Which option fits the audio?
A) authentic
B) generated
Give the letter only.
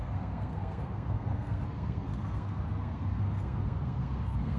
B